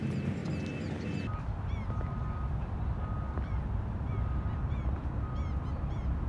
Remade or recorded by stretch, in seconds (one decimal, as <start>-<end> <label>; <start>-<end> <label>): 0.0-6.3 recorded